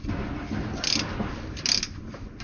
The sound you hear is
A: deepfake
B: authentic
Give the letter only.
B